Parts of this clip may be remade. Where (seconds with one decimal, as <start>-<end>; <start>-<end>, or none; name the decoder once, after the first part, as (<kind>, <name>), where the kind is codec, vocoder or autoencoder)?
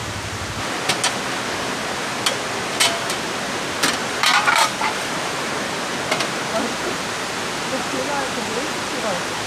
0.0-0.5 (vocoder, BigVGAN v2); 4.0-5.5